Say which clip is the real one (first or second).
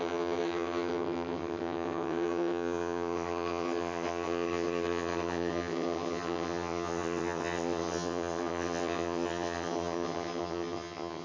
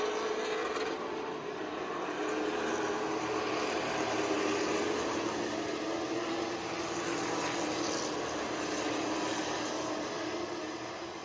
second